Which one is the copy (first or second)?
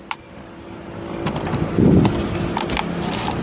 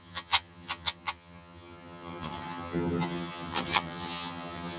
second